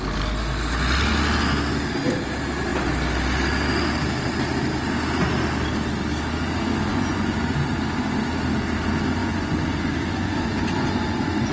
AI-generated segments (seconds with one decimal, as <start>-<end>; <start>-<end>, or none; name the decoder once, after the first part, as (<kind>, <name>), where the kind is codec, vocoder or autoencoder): 6.9-7.7 (vocoder, Vocos); 9.2-11.5